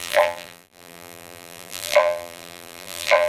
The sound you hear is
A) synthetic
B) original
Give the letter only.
A